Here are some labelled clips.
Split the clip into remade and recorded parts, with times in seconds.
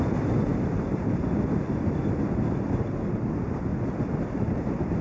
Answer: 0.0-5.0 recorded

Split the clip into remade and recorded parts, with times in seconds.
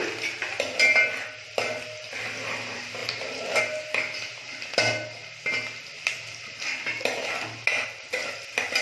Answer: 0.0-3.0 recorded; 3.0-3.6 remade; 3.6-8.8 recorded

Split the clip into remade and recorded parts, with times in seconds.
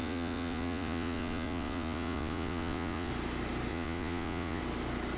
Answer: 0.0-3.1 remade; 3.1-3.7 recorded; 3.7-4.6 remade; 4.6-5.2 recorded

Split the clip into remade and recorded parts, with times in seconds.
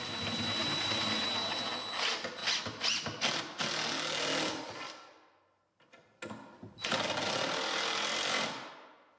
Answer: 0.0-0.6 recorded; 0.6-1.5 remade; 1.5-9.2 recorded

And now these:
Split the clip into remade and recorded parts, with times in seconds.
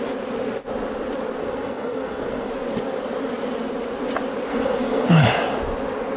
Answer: 0.0-1.4 recorded; 1.4-2.5 remade; 2.5-4.5 recorded; 4.5-5.1 remade; 5.1-6.2 recorded